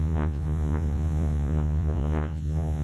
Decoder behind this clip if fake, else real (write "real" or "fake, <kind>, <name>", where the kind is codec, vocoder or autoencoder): fake, vocoder, Vocos